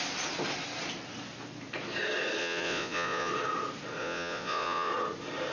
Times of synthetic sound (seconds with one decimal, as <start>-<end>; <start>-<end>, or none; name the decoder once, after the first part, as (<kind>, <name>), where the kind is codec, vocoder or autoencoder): 2.4-3.3 (vocoder, Vocos); 4.0-4.9